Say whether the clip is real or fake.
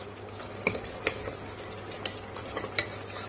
real